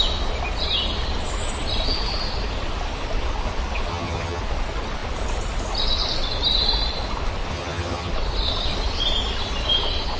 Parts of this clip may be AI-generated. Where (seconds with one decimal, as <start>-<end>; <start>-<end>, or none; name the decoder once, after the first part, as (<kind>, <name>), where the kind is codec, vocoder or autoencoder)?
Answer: 3.9-4.4 (vocoder, HiFi-GAN); 7.5-8.1